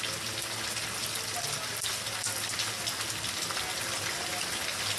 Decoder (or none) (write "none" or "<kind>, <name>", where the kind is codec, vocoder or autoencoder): none